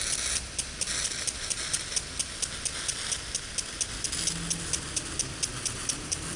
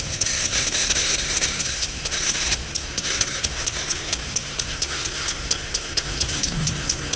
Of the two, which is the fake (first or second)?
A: second